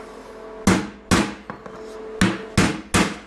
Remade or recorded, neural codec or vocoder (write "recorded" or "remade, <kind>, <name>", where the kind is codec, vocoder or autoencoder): recorded